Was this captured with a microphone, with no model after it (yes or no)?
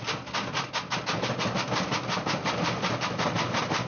yes